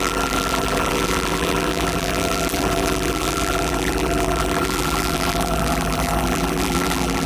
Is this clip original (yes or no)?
no